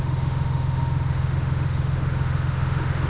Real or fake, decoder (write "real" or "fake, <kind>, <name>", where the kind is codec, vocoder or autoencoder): fake, autoencoder, DAC-VAE